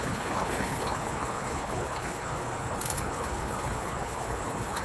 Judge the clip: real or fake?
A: fake